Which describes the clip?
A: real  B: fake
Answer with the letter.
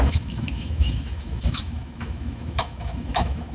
B